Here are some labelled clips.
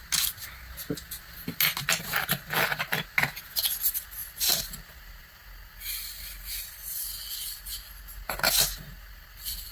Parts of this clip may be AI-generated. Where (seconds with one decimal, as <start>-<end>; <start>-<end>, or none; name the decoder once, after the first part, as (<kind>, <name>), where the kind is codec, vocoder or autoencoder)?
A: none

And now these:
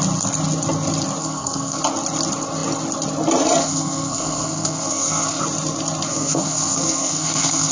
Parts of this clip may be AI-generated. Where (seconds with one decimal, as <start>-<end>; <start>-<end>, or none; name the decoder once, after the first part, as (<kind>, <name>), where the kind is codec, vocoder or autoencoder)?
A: 1.2-1.8 (codec, SNAC); 3.6-5.4; 6.1-7.7

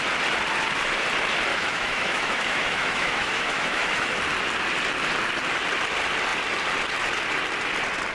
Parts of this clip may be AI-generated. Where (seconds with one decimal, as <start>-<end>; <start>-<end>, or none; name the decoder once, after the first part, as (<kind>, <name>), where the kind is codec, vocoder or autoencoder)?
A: 1.5-4.2 (autoencoder, DAC-VAE)

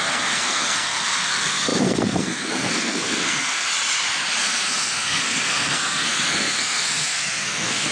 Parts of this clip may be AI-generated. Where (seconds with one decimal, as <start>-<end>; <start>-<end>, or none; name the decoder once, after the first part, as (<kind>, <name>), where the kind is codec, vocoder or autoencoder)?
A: 0.0-3.7 (codec, SNAC); 4.4-7.9

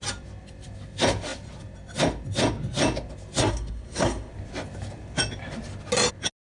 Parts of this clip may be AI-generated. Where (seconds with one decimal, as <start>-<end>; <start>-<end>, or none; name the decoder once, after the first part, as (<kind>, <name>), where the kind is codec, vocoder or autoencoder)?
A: 3.4-4.3 (codec, SNAC)

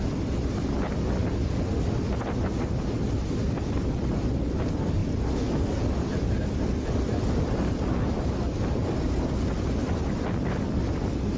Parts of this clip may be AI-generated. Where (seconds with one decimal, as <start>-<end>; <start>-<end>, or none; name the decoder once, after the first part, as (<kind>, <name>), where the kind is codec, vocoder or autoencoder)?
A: none

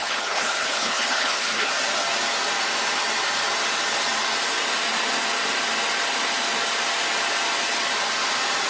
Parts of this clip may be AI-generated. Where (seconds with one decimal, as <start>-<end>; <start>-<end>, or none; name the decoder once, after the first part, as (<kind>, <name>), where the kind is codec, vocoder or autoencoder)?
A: 0.0-1.7 (codec, HILCodec)

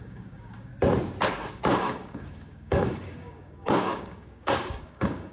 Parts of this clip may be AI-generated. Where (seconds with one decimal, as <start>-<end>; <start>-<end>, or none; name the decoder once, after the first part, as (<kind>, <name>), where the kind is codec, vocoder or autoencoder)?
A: 0.0-0.7 (codec, DAC); 1.5-5.3